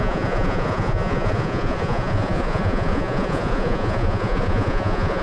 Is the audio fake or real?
fake